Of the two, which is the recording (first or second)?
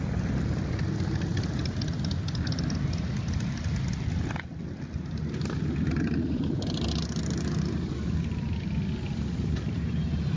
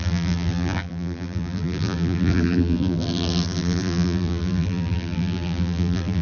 first